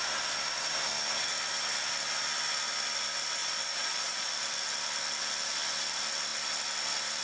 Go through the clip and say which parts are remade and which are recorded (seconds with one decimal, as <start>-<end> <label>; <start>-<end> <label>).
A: 0.0-3.4 recorded; 3.4-4.3 remade; 4.3-7.2 recorded